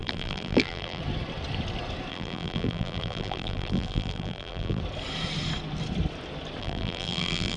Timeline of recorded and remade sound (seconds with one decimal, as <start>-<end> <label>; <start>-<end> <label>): 0.0-1.0 remade; 1.0-2.1 recorded; 2.1-4.8 remade; 4.8-6.6 recorded; 6.6-7.6 remade